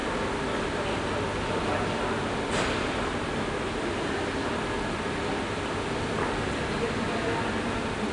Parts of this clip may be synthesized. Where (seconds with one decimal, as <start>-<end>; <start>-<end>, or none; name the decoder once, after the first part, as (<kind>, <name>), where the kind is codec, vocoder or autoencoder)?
none